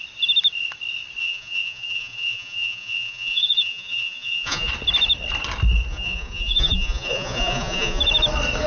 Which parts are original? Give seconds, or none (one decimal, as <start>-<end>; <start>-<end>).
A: 0.0-1.2; 4.7-5.9; 8.0-8.7